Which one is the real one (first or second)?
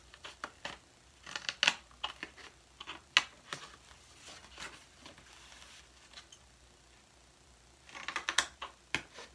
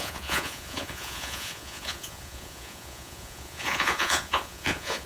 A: first